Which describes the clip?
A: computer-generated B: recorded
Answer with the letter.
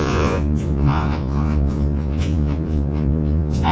A